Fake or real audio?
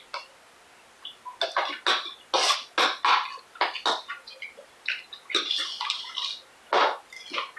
real